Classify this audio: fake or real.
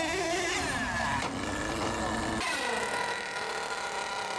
real